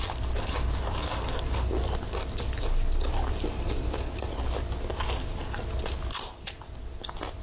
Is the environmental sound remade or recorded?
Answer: recorded